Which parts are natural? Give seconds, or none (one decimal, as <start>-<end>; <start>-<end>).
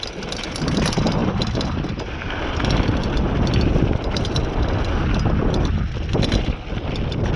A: 0.0-7.4